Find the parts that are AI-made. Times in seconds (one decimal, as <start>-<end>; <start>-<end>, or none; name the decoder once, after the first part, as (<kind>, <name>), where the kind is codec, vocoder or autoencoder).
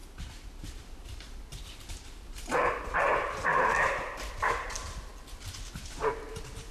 0.0-0.8 (vocoder, BigVGAN v2)